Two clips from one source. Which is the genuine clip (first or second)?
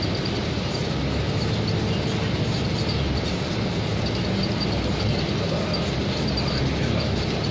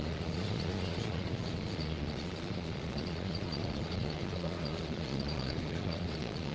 first